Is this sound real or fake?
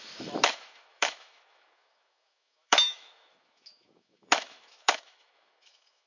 fake